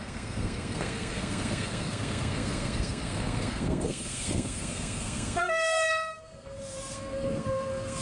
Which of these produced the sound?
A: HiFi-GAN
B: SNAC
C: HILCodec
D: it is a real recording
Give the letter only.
B